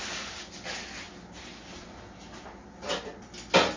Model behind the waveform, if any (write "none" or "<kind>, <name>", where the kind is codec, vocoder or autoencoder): none